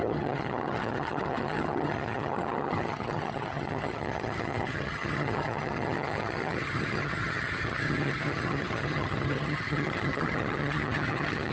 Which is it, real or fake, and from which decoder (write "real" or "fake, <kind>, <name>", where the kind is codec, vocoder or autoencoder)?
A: fake, vocoder, HiFi-GAN